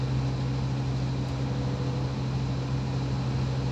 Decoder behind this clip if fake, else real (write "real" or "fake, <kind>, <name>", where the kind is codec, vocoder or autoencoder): real